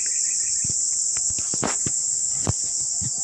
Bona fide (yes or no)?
yes